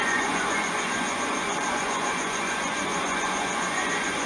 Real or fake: fake